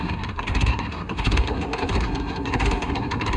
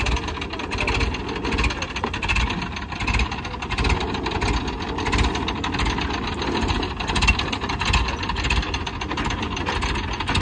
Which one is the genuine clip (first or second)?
second